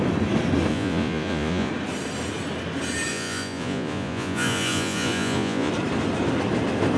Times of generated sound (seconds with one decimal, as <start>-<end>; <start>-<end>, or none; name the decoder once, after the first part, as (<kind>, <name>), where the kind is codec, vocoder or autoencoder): 0.7-1.7 (vocoder, Vocos); 3.1-5.7